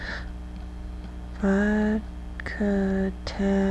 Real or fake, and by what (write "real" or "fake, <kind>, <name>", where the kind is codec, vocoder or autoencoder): real